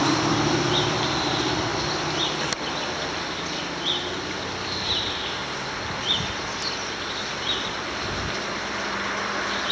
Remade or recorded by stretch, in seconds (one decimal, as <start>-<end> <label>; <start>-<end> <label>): 0.0-1.7 remade; 1.7-2.7 recorded; 2.7-5.4 remade; 5.4-9.7 recorded